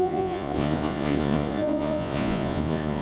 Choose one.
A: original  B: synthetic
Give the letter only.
B